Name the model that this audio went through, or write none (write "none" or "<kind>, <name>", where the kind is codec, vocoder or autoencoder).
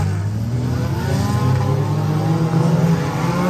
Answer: none